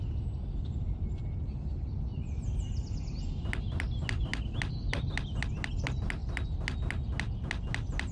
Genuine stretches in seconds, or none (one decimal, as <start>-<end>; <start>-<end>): 0.0-8.1